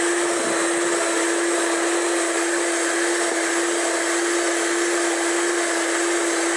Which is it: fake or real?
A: real